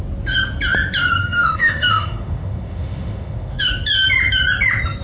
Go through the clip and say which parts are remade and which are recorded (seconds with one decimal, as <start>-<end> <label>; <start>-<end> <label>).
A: 0.0-1.2 recorded; 1.2-3.6 remade; 3.6-5.0 recorded